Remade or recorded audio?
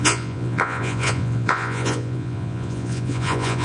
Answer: remade